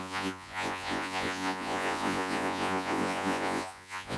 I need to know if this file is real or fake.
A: fake